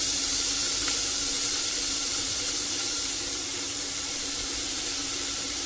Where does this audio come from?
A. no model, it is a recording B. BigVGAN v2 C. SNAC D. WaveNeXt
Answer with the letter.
B